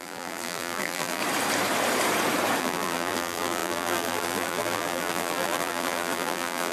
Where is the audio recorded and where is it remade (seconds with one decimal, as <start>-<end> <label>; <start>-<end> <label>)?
0.0-1.2 remade; 1.2-2.6 recorded; 2.6-6.7 remade